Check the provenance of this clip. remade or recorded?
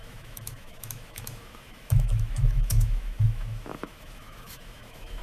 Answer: remade